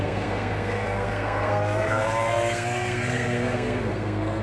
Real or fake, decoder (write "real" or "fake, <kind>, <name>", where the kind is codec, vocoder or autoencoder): fake, codec, SNAC